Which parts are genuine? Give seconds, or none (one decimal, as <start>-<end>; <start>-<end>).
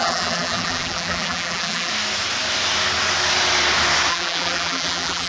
1.9-4.1